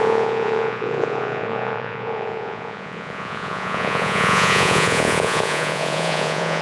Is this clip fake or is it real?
fake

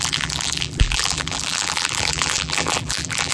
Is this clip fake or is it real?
fake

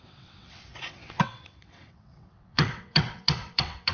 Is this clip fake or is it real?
fake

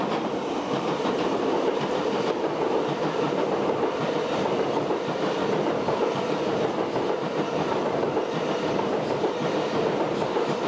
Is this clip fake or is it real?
fake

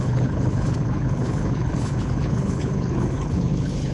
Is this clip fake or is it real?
fake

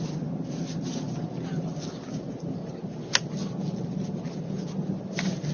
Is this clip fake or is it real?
real